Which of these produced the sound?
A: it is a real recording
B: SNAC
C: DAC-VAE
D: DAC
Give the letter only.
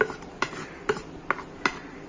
A